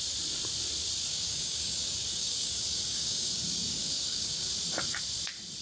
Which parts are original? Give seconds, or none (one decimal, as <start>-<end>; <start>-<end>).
0.0-1.1; 4.5-5.6